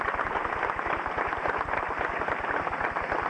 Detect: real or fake fake